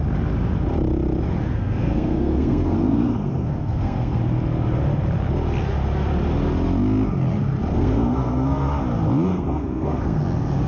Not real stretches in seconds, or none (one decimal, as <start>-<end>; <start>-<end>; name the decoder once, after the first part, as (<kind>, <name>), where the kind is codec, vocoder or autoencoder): 1.5-4.2 (codec, SNAC); 7.7-8.7; 9.3-10.2

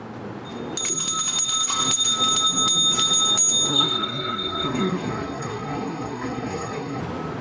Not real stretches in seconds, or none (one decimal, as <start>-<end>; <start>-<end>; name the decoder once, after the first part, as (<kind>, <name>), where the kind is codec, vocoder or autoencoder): 3.7-7.0 (codec, SNAC)